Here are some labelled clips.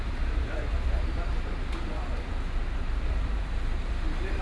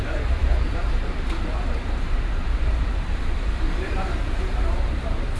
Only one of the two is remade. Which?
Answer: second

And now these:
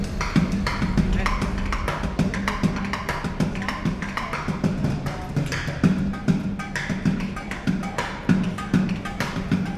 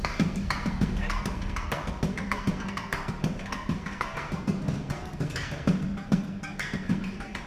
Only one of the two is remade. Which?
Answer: second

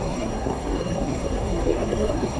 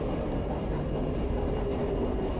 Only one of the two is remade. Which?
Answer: first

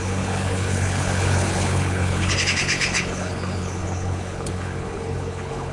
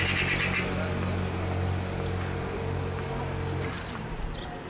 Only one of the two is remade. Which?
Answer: first